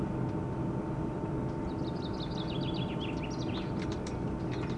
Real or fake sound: real